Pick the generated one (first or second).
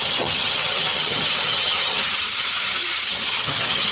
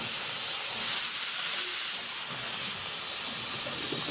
first